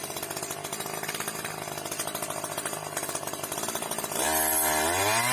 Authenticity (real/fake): real